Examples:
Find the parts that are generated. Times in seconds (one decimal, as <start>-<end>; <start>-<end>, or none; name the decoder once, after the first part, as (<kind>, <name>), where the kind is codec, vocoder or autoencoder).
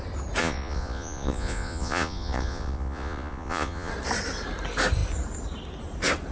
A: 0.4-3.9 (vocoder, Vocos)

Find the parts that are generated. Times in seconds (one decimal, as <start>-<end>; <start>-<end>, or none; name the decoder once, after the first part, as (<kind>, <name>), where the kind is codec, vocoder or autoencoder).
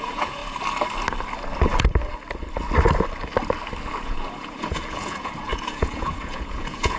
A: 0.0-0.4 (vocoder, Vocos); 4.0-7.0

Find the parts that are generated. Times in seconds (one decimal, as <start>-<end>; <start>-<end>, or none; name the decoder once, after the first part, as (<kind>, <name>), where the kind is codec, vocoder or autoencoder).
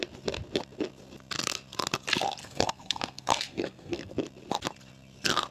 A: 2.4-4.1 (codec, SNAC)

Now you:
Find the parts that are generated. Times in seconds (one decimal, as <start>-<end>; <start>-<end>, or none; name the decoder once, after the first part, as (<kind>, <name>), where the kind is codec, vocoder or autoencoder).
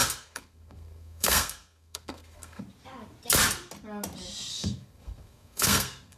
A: 0.0-2.6 (codec, SNAC); 4.5-6.2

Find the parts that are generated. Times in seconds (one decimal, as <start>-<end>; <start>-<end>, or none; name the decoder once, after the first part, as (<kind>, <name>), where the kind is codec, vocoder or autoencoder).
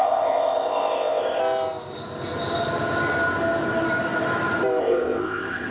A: 0.0-1.4 (codec, ZipCodec); 4.8-5.7